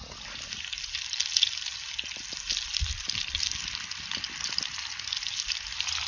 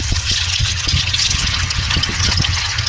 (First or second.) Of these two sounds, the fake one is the second